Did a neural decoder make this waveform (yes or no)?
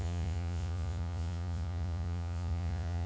yes